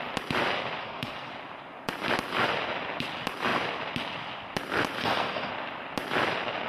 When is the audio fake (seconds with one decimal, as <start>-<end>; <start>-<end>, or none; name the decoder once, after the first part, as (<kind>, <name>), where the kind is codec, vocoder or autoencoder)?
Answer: 0.8-1.3 (codec, SNAC); 5.0-5.5